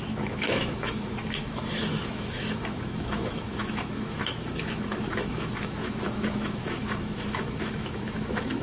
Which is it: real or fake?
fake